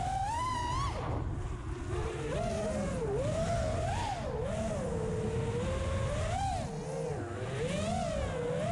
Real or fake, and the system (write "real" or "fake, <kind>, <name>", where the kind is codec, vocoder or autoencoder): real